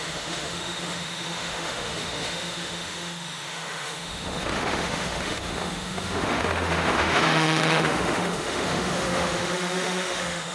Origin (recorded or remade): remade